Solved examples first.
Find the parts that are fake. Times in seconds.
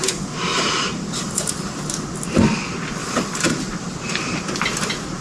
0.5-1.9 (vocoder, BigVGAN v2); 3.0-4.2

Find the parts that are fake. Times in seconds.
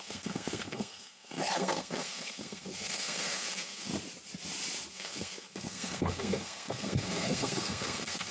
0.0-3.9 (codec, SNAC); 4.9-8.3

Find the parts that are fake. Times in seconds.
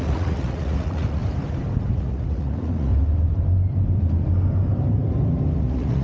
0.0-1.2 (vocoder, Vocos); 1.9-2.9; 5.6-6.0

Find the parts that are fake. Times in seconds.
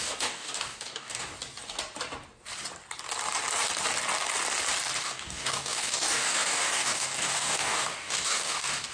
0.0-1.3 (codec, DAC); 5.0-8.9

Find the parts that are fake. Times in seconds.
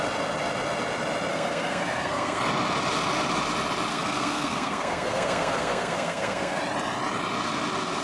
1.3-2.4 (codec, SNAC); 3.9-6.6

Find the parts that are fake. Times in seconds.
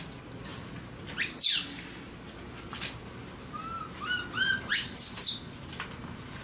none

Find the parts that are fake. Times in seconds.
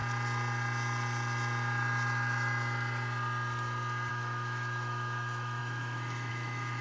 4.1-6.8 (autoencoder, DAC-VAE)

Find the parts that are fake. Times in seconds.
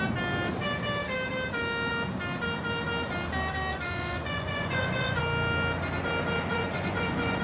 3.7-5.2 (vocoder, Vocos); 6.5-7.4